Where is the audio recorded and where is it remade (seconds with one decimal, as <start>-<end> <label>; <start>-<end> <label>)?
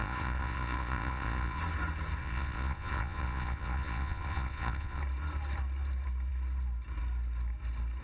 0.0-1.6 remade; 1.6-2.2 recorded; 2.2-5.0 remade; 5.0-8.0 recorded